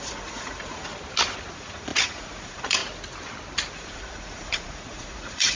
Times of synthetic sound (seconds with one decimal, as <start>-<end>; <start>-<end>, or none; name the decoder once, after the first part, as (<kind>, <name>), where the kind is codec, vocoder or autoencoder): 0.0-0.9 (vocoder, Vocos); 1.5-2.8; 3.7-5.6